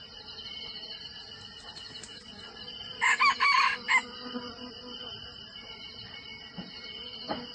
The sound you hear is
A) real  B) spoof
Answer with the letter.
A